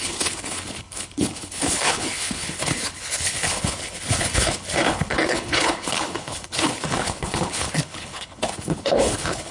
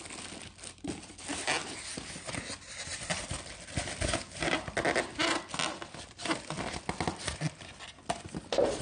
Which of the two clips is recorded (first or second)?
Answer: second